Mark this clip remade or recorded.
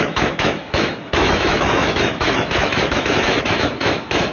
remade